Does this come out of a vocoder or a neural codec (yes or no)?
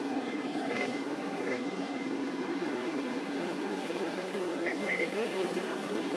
yes